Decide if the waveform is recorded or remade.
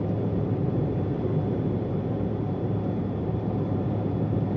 remade